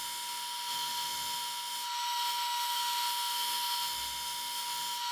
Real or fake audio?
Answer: fake